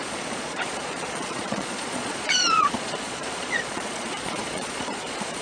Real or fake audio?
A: fake